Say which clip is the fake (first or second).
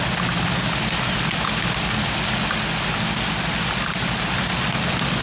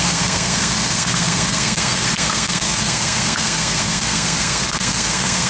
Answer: second